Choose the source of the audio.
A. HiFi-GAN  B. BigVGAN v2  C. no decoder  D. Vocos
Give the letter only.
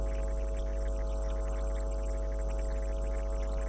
C